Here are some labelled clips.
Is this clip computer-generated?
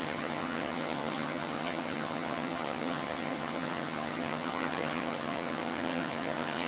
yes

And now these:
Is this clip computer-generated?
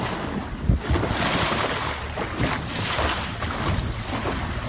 no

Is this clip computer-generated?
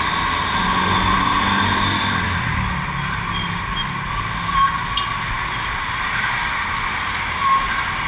no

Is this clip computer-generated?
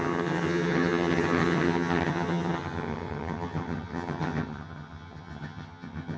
yes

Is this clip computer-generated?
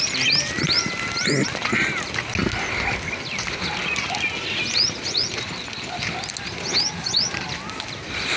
no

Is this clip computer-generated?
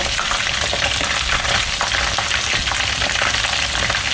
no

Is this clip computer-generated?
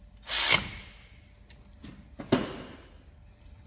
no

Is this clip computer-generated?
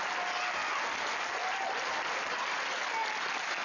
no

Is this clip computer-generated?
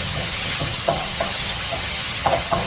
yes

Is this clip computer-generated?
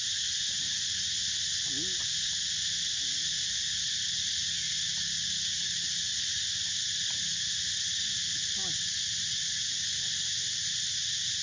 no